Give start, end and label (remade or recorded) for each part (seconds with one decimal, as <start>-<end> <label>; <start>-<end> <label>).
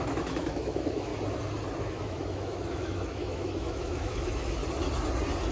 0.0-1.1 remade; 1.1-1.8 recorded; 1.8-4.6 remade; 4.6-5.5 recorded